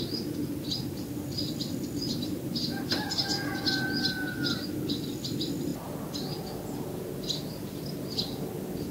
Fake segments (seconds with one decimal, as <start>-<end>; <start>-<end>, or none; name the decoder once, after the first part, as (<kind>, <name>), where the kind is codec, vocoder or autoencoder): none